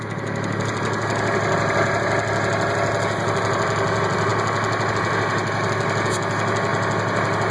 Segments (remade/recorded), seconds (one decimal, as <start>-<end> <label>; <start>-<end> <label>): 0.0-7.5 recorded

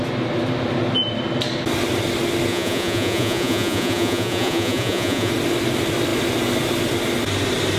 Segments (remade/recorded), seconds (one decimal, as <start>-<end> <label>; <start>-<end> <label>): 0.0-2.5 recorded; 2.5-5.3 remade; 5.3-7.8 recorded

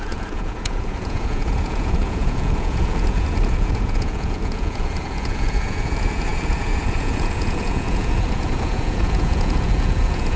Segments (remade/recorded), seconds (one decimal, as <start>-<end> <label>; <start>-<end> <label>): 0.0-10.4 remade

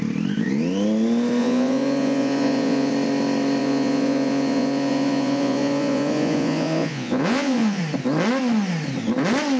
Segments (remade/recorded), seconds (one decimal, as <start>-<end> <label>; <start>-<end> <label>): 0.0-1.4 recorded; 1.4-2.9 remade; 2.9-3.6 recorded; 3.6-7.8 remade; 7.8-9.6 recorded

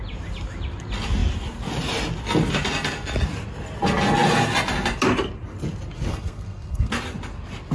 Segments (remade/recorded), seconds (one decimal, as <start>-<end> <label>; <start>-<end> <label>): 0.0-6.1 recorded; 6.1-6.9 remade; 6.9-7.7 recorded

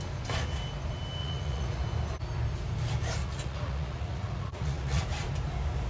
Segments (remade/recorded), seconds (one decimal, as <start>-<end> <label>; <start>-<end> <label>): 0.0-1.2 recorded; 1.2-1.8 remade; 1.8-3.2 recorded; 3.2-5.0 remade; 5.0-5.9 recorded